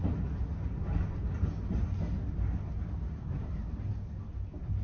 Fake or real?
real